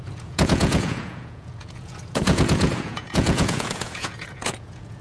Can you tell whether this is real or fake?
fake